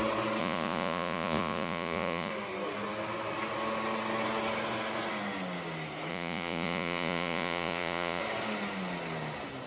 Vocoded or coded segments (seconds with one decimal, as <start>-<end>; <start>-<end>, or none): 0.4-2.3; 6.1-8.2